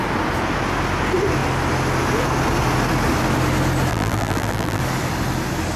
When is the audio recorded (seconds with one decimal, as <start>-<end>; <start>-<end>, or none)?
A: 0.0-3.9; 4.8-5.8